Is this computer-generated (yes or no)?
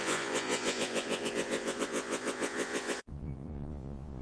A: yes